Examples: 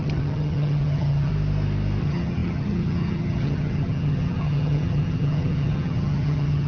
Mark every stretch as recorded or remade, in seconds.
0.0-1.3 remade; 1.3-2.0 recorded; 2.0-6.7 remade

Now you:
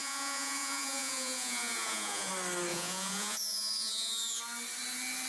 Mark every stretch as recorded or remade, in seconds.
0.0-2.3 remade; 2.3-2.7 recorded; 2.7-4.4 remade; 4.4-5.3 recorded

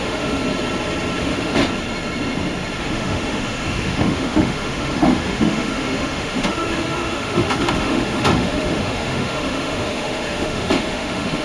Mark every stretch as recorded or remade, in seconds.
0.0-0.4 remade; 0.4-1.2 recorded; 1.2-1.6 remade; 1.6-2.8 recorded; 2.8-11.4 remade

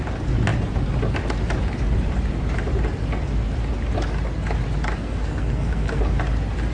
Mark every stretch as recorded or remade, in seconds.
0.0-5.0 recorded; 5.0-6.0 remade; 6.0-6.7 recorded

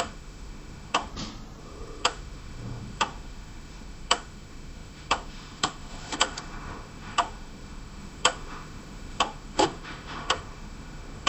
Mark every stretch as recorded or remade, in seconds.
0.0-1.1 remade; 1.1-1.6 recorded; 1.6-11.3 remade

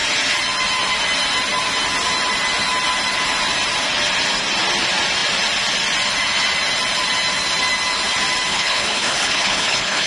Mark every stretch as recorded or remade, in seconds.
0.0-8.5 recorded; 8.5-10.1 remade